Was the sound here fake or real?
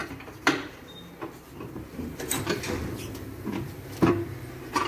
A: fake